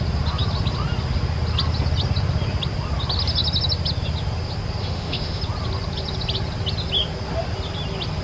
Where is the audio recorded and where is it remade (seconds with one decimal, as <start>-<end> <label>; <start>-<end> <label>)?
0.0-4.8 recorded; 4.8-5.4 remade; 5.4-8.2 recorded